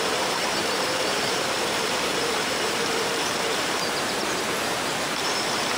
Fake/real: fake